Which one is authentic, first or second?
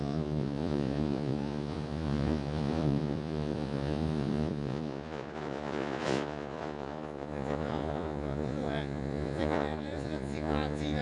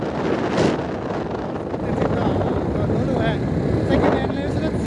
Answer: second